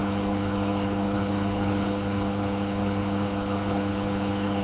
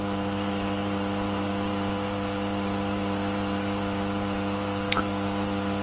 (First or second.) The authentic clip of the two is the second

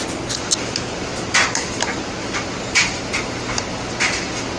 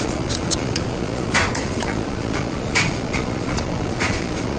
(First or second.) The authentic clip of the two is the first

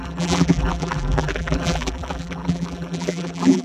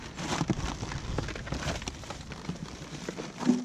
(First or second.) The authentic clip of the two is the second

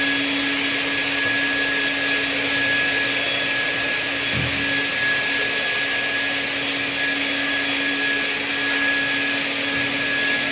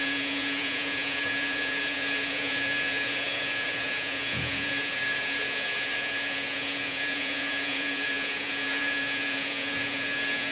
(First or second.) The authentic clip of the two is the first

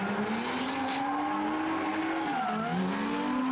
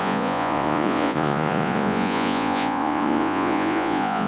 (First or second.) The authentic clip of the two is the first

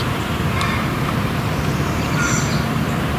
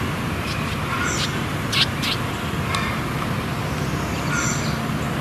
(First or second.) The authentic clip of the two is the second